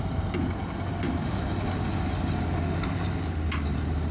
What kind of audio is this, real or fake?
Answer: real